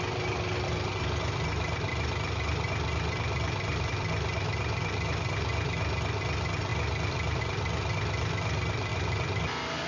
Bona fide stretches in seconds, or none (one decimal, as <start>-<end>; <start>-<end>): 0.0-6.7; 7.4-8.9